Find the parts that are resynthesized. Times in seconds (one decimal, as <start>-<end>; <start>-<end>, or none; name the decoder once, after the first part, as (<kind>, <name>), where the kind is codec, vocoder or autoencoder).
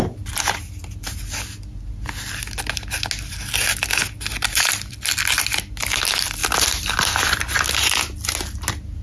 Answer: 6.4-7.6 (vocoder, BigVGAN v2)